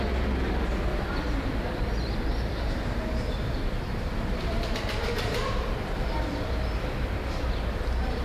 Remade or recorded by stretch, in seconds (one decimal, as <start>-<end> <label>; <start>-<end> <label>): 0.0-0.9 recorded; 0.9-5.7 remade; 5.7-8.2 recorded